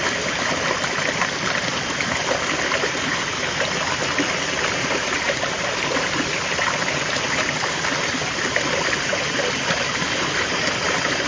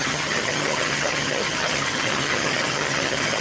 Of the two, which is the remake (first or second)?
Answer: second